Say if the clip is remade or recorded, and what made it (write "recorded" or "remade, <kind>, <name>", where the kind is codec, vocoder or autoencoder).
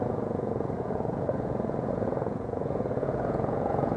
remade, vocoder, Vocos